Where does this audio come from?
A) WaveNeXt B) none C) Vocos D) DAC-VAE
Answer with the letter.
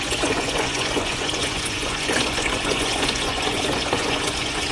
C